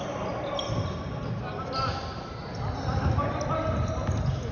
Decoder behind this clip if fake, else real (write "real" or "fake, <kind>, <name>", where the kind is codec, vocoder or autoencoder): real